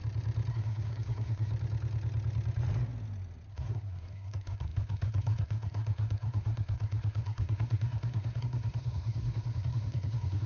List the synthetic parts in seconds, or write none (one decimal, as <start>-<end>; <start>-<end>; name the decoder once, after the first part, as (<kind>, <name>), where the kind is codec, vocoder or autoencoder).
0.5-1.5 (codec, SNAC); 3.5-10.5